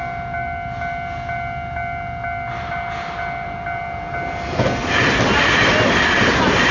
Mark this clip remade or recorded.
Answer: recorded